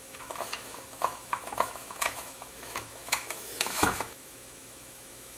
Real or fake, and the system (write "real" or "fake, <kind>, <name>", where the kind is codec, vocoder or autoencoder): fake, autoencoder, DAC-VAE